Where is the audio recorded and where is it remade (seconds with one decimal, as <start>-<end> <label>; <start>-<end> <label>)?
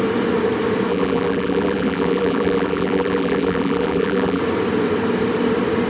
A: 0.0-0.9 recorded; 0.9-4.4 remade; 4.4-5.9 recorded